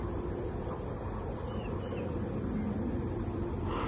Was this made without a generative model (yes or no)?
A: yes